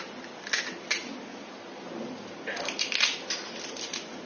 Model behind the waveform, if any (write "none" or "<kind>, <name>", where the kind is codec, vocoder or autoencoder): none